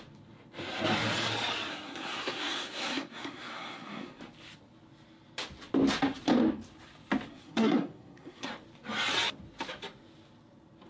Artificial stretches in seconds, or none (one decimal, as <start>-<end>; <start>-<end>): 1.7-4.2; 7.3-8.5

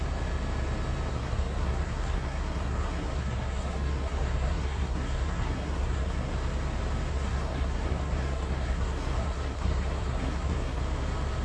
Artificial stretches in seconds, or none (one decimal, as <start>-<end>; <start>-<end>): 1.1-6.3; 7.1-10.8

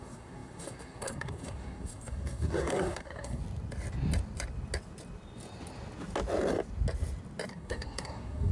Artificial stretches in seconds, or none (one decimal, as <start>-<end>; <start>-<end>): 0.0-3.4; 7.5-8.5

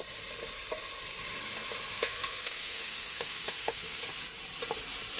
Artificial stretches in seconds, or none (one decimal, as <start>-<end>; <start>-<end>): 1.9-4.0

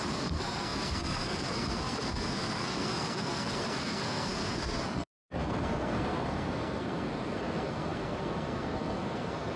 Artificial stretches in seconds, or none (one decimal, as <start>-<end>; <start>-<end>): 0.0-9.6

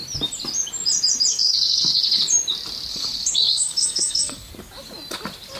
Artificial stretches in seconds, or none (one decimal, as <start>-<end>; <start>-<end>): 1.3-2.2; 2.9-4.5